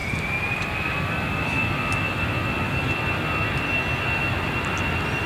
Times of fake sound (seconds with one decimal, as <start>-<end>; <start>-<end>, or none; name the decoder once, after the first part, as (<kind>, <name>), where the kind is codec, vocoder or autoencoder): none